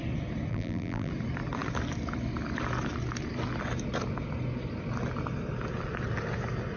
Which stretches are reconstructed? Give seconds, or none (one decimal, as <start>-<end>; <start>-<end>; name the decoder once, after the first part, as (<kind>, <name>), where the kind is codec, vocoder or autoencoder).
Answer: 0.5-1.1 (vocoder, BigVGAN v2)